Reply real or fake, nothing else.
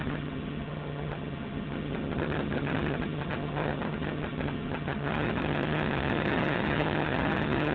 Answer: fake